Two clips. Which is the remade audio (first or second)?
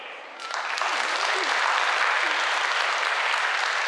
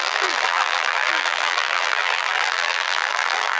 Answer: second